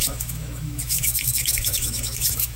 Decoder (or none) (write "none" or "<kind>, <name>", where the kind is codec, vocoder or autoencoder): autoencoder, DAC-VAE